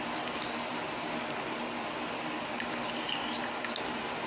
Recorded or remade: recorded